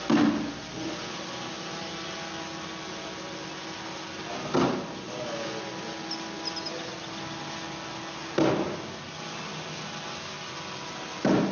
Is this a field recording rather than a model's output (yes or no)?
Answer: yes